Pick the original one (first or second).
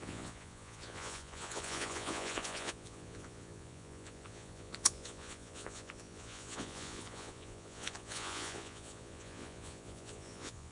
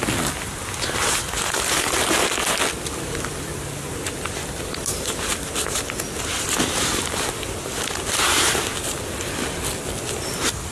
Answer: second